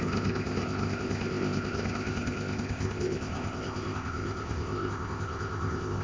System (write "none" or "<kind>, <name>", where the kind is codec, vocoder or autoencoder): codec, ZipCodec